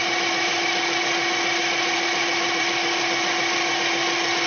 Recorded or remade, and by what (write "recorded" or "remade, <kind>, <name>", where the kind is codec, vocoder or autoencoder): recorded